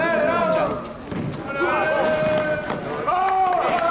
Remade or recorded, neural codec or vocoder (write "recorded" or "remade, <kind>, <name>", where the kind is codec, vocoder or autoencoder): recorded